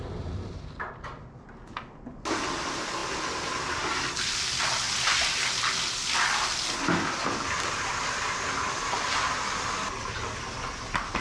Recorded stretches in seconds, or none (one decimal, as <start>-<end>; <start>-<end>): 0.0-11.2